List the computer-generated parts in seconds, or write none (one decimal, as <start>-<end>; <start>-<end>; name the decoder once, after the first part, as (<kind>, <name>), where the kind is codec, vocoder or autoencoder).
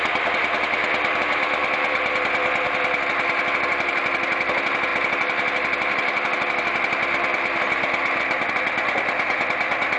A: none